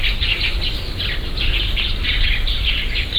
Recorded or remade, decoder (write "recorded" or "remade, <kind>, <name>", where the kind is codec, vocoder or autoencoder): recorded